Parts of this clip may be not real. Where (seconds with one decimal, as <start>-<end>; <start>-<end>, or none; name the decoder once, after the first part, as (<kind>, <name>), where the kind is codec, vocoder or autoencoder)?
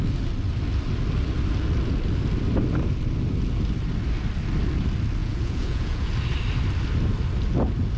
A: 5.2-6.1 (vocoder, Vocos)